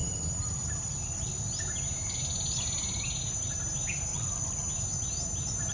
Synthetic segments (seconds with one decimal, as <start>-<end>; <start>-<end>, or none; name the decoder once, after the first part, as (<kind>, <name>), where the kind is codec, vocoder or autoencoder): 4.1-4.6 (vocoder, Vocos)